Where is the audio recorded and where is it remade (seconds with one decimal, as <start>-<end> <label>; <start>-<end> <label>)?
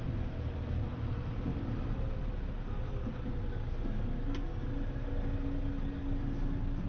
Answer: 0.0-6.9 recorded